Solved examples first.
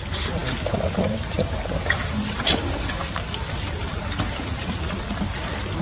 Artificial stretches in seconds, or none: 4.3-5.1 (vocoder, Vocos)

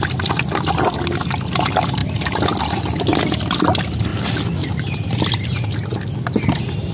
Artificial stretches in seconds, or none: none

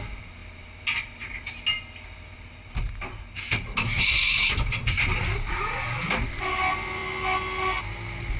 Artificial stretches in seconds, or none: none